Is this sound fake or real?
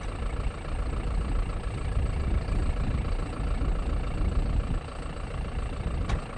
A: real